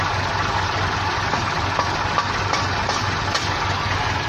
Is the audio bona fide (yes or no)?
yes